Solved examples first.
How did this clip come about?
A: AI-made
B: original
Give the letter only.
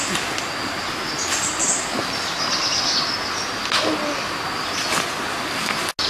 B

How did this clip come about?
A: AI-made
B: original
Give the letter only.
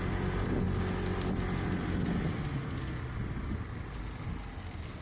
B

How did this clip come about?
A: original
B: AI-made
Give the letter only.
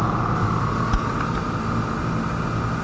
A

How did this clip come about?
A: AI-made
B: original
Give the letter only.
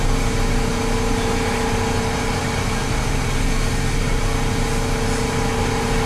B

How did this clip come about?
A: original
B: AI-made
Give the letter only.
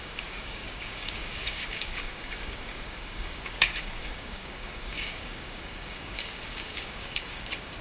B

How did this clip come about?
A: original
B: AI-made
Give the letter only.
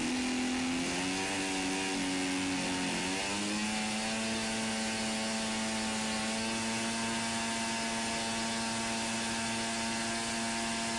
A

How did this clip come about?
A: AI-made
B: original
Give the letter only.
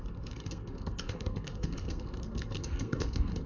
A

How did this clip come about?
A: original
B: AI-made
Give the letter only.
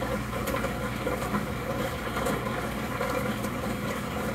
B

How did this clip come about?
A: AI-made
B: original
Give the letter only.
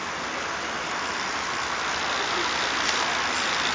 B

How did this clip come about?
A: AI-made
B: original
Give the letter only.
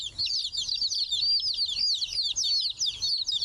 B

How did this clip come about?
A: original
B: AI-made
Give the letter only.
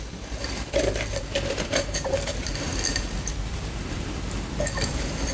B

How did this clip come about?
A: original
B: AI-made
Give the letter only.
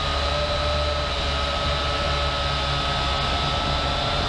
A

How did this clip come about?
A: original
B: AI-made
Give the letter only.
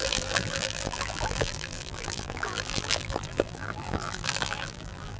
B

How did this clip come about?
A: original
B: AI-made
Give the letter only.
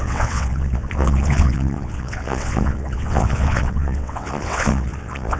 B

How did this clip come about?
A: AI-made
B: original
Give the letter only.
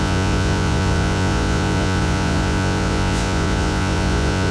A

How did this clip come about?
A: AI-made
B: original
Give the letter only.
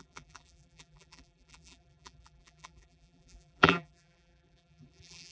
A